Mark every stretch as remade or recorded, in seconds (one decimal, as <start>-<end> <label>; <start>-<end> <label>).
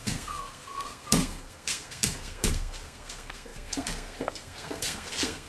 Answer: 0.0-5.5 remade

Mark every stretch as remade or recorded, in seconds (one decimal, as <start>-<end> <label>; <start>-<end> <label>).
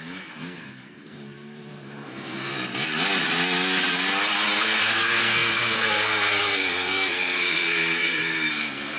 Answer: 0.0-2.5 remade; 2.5-4.6 recorded; 4.6-9.0 remade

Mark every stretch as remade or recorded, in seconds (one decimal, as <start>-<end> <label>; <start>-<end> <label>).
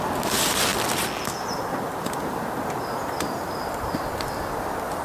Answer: 0.0-5.0 recorded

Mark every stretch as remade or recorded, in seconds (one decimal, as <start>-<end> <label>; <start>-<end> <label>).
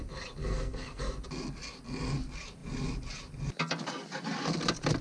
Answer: 0.0-0.4 recorded; 0.4-1.0 remade; 1.0-5.0 recorded